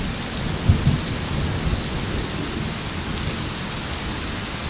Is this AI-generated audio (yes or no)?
no